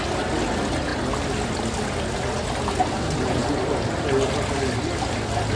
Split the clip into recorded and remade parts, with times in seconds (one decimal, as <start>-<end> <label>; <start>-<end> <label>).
0.0-5.6 recorded